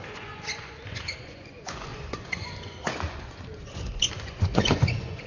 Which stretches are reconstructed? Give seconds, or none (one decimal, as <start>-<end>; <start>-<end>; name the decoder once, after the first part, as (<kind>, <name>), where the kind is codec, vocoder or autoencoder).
0.0-5.3 (vocoder, Vocos)